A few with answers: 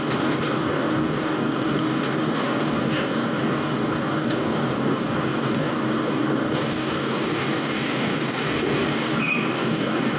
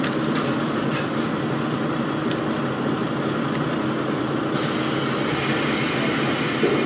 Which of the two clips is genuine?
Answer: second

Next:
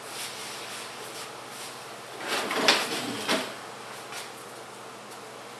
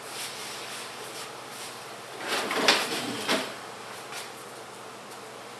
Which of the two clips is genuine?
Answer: first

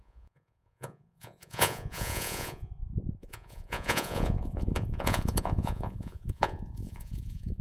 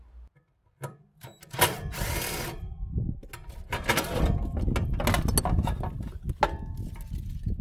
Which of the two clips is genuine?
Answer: second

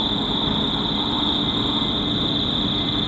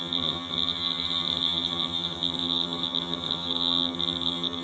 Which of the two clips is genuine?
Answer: first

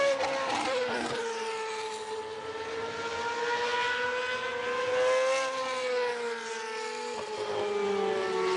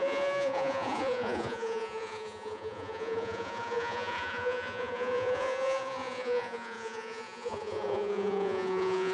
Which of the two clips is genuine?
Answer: first